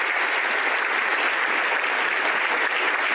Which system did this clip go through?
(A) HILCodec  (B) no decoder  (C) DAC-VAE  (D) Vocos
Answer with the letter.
B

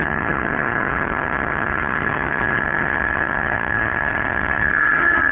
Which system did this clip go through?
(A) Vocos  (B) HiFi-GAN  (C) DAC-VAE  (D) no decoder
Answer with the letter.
B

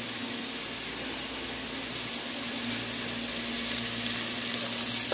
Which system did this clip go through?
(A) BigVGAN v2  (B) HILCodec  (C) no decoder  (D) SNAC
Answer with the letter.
C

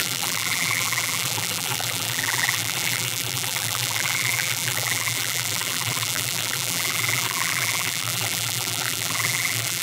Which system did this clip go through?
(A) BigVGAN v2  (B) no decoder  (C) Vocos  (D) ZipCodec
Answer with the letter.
A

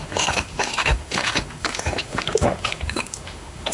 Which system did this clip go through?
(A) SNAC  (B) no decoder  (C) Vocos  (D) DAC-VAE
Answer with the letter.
D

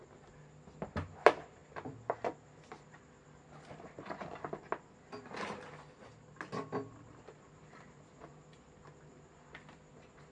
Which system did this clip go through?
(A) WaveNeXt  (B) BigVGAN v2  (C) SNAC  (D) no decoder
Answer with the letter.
D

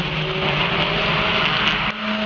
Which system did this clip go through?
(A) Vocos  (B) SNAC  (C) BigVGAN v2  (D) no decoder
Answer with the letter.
D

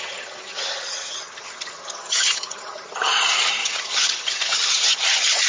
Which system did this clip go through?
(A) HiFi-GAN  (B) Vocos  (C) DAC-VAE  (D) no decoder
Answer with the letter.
A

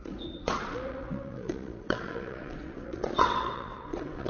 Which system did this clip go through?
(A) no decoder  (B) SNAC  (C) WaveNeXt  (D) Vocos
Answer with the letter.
C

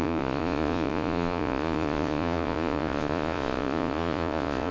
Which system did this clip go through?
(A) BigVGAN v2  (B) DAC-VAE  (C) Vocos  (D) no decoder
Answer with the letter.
C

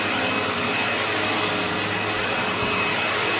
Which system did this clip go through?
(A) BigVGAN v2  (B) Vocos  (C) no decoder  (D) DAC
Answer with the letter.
C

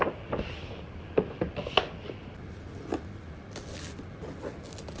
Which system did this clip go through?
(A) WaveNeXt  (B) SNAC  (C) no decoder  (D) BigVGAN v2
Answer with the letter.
C